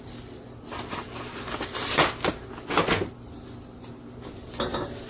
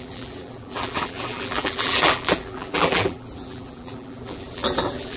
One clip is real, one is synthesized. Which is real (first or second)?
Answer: first